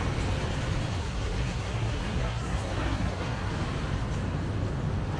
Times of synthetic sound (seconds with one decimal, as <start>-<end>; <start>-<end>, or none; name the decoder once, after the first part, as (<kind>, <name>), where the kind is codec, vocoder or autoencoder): 1.0-3.5 (codec, SNAC)